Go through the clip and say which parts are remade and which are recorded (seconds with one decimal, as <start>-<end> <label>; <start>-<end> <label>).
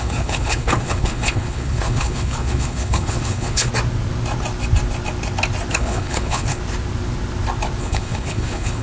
0.0-3.7 remade; 3.7-5.7 recorded; 5.7-6.6 remade; 6.6-7.8 recorded; 7.8-8.8 remade